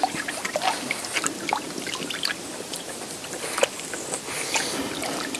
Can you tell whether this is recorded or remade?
recorded